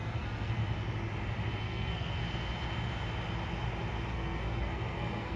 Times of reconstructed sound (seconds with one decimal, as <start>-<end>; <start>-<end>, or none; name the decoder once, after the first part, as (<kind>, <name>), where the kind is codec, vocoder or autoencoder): 0.0-0.6 (codec, SNAC); 1.6-2.2; 4.1-5.4